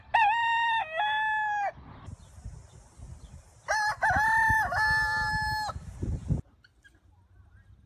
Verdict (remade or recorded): recorded